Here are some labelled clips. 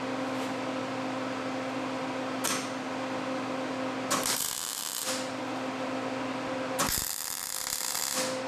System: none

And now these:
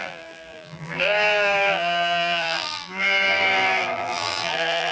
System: vocoder, BigVGAN v2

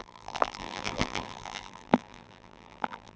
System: vocoder, BigVGAN v2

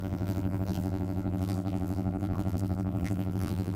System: vocoder, BigVGAN v2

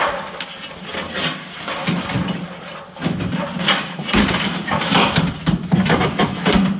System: none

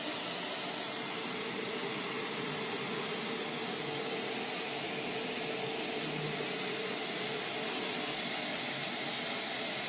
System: none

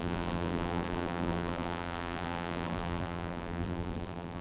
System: vocoder, BigVGAN v2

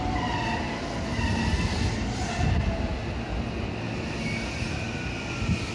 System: none